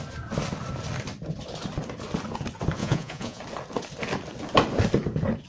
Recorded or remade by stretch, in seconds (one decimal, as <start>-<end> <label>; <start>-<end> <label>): 0.0-2.8 recorded; 2.8-3.4 remade; 3.4-5.5 recorded